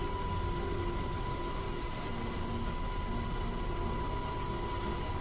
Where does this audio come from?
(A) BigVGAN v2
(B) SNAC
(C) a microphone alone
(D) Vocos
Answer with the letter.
C